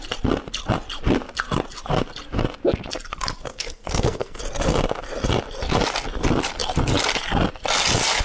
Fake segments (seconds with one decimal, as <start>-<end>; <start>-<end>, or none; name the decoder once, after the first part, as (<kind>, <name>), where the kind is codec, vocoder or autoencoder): 3.5-4.4 (codec, SNAC)